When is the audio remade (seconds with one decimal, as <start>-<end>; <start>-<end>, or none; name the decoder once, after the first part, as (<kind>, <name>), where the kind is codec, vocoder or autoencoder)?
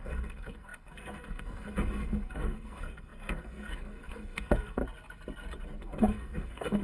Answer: 0.0-4.8 (codec, SNAC); 5.8-6.8